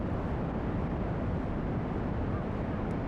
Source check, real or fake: real